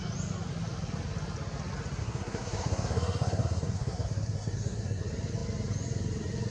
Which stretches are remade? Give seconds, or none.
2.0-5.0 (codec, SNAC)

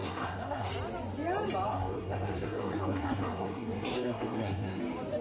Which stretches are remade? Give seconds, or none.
0.0-0.7 (codec, SNAC); 1.7-4.8

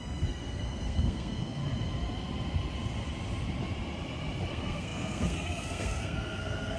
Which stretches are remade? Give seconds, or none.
0.0-1.6 (codec, SNAC); 4.5-6.8

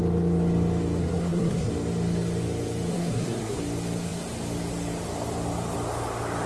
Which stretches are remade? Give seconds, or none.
1.0-1.7 (codec, SNAC); 2.9-3.6

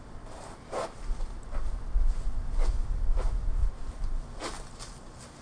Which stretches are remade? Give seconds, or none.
none

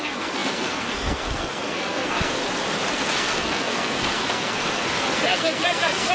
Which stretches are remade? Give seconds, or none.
0.0-2.4 (codec, SNAC); 2.9-6.1